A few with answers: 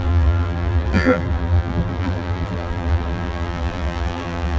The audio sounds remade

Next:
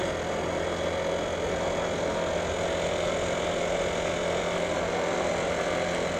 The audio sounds recorded